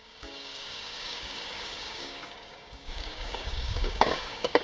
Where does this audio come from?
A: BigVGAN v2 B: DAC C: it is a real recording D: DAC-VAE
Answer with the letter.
B